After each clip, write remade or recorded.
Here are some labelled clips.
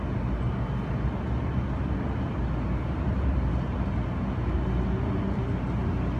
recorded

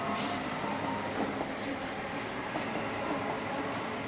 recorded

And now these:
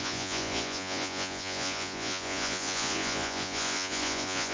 remade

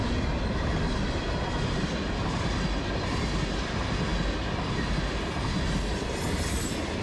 recorded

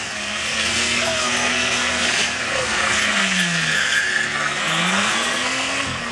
remade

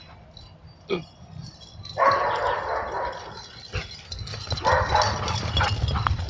recorded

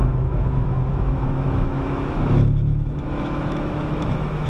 remade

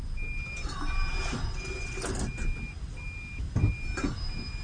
recorded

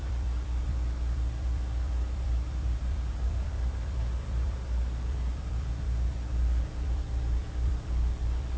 remade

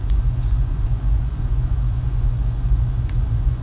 remade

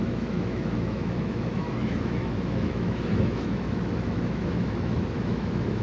remade